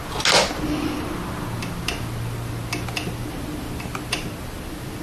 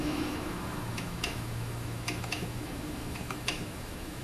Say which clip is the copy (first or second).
second